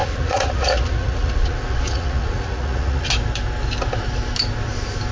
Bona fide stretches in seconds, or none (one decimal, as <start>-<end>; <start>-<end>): 3.1-5.1